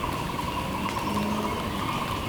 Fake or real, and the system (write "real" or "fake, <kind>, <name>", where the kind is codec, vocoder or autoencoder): real